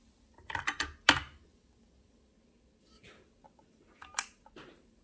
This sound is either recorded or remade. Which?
recorded